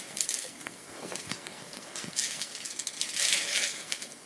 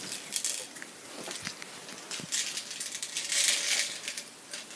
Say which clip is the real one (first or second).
second